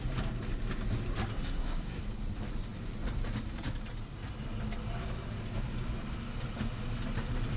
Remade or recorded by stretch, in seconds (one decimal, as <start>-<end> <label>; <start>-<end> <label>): 0.0-1.3 recorded; 1.3-2.0 remade; 2.0-7.6 recorded